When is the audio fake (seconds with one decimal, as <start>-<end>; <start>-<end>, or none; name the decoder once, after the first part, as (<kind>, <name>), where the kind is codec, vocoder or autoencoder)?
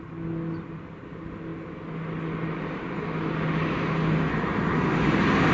none